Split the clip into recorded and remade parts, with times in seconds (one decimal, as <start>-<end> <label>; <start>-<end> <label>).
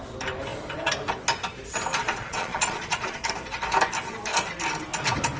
0.0-2.0 recorded; 2.0-3.2 remade; 3.2-5.4 recorded